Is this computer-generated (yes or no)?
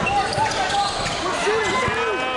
no